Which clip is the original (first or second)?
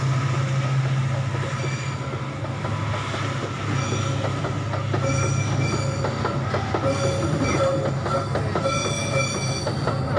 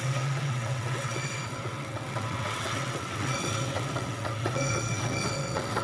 first